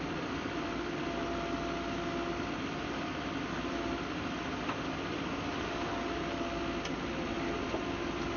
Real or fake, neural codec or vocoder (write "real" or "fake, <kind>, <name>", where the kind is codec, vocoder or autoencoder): real